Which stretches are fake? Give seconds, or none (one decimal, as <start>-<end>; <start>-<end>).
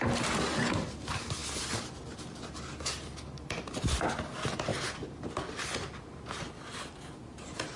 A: none